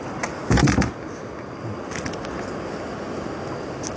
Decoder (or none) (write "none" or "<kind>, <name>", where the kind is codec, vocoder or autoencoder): none